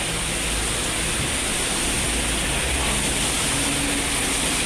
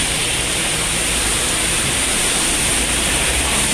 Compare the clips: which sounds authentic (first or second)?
first